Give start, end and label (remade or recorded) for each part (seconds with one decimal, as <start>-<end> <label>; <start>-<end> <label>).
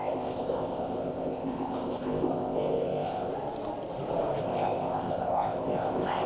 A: 0.0-3.3 remade; 3.3-4.4 recorded; 4.4-6.3 remade